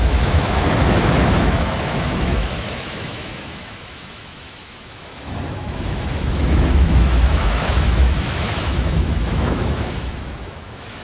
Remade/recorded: remade